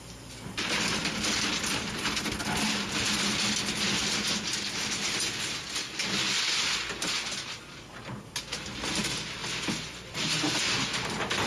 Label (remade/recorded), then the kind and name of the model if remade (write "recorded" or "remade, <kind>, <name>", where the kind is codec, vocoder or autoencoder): recorded